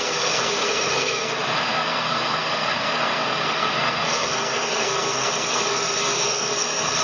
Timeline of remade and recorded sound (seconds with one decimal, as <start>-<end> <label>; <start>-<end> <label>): 0.0-7.0 remade